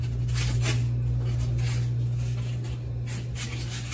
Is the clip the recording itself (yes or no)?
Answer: yes